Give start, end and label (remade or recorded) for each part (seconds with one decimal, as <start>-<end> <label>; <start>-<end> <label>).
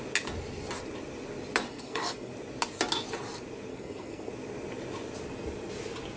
0.0-1.7 recorded; 1.7-2.3 remade; 2.3-3.7 recorded; 3.7-4.3 remade; 4.3-6.2 recorded